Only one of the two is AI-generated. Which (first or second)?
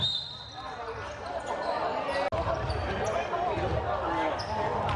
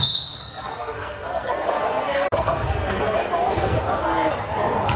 second